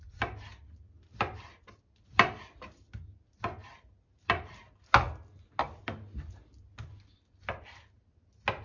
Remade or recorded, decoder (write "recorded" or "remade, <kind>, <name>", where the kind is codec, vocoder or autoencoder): recorded